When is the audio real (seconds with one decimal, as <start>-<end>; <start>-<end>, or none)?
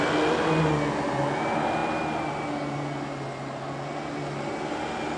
0.0-5.2